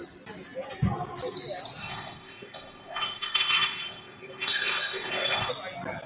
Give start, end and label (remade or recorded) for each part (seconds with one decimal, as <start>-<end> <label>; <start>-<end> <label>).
0.0-1.8 recorded; 1.8-5.5 remade; 5.5-6.1 recorded